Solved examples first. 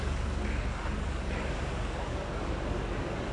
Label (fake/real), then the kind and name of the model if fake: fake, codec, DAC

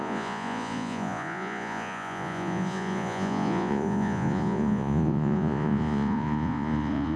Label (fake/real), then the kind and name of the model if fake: fake, vocoder, Vocos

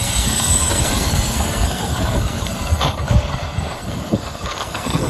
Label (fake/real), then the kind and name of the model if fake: fake, codec, SNAC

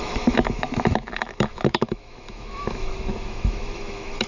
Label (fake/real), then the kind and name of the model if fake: fake, autoencoder, DAC-VAE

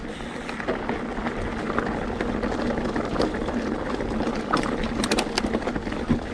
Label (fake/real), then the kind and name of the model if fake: real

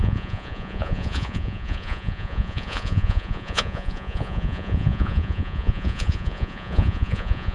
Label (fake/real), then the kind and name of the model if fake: fake, vocoder, Vocos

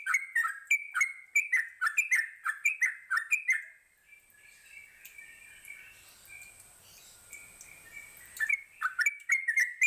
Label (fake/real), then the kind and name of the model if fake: real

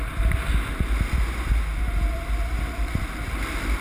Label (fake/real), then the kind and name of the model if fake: real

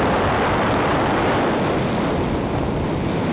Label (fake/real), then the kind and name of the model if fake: real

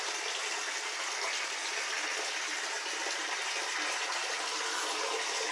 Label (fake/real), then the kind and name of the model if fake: real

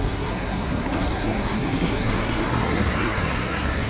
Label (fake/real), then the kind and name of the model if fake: fake, codec, SNAC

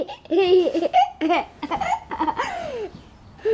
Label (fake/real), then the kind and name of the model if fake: real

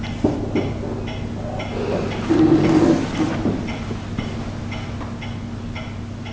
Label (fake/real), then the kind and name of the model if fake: real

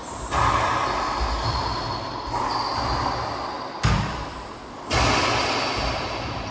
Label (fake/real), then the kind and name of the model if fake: real